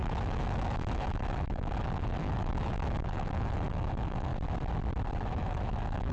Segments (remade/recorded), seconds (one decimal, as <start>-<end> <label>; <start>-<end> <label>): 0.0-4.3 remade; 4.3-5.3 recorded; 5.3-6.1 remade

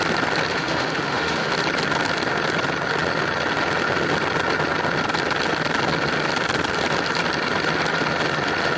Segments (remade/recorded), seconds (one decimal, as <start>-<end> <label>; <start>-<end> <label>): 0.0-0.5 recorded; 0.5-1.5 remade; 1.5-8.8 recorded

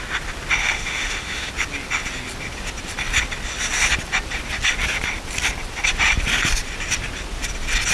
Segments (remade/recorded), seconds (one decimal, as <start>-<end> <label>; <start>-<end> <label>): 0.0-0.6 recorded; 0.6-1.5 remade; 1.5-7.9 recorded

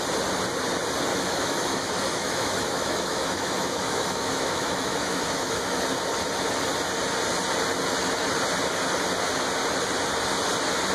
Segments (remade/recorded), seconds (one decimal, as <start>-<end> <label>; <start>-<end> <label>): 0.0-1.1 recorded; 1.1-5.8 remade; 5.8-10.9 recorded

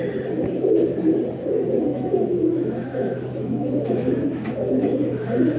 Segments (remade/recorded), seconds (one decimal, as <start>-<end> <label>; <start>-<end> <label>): 0.0-1.9 recorded; 1.9-5.6 remade

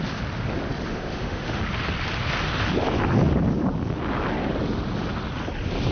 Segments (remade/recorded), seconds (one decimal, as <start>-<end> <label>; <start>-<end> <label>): 0.0-0.9 recorded; 0.9-1.6 remade; 1.6-5.9 recorded

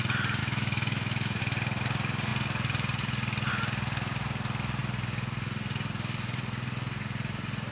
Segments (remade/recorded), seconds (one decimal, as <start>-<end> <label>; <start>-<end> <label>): 0.0-0.4 recorded; 0.4-1.4 remade; 1.4-7.7 recorded